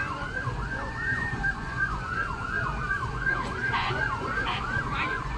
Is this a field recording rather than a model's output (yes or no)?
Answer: no